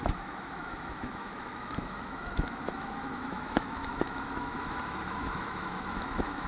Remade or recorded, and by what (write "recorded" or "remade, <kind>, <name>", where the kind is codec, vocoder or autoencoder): remade, autoencoder, DAC-VAE